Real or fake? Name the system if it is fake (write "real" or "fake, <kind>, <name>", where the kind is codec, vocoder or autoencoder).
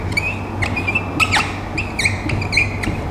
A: real